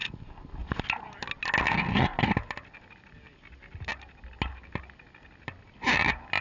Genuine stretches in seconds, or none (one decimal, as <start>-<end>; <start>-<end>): 0.0-6.4

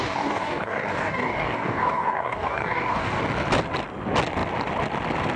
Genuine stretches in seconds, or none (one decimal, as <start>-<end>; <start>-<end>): 3.2-5.4

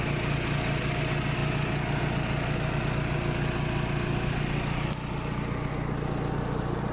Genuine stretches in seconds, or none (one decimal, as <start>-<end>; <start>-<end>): 0.0-6.9

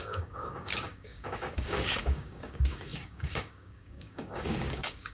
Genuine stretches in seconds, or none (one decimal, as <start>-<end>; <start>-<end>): none

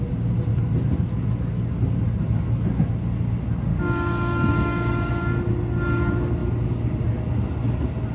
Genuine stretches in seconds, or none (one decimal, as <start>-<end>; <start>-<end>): 0.0-3.7; 5.1-8.1

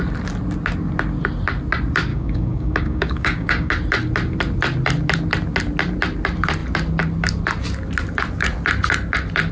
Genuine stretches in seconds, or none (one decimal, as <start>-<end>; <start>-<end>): 0.0-2.1; 3.7-9.5